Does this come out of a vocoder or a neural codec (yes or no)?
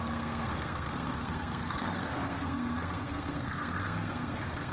yes